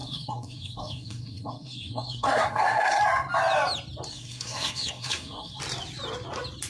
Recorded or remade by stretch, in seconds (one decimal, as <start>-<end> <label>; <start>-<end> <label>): 0.0-3.0 remade; 3.0-4.1 recorded; 4.1-5.6 remade; 5.6-6.7 recorded